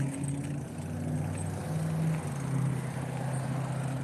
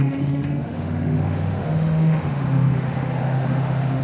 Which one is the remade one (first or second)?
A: second